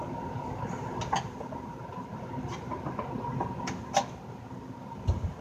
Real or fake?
real